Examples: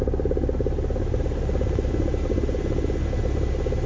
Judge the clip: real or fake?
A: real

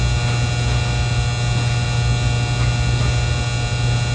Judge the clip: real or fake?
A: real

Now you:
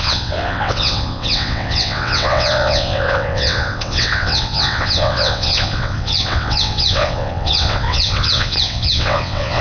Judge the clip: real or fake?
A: fake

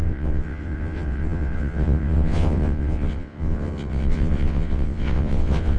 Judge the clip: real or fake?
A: fake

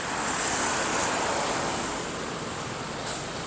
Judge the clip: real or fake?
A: real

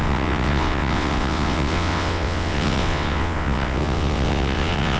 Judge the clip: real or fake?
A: fake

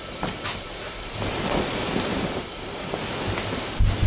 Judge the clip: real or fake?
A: real